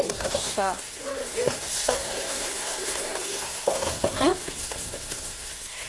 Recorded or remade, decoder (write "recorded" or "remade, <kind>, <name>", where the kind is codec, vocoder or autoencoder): remade, codec, SNAC